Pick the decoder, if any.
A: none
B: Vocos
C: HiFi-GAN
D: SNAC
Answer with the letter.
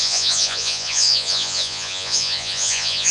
B